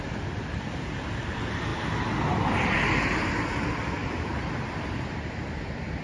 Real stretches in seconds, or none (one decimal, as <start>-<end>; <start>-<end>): 0.0-6.0